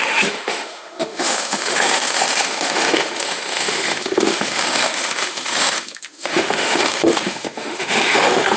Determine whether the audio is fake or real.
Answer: fake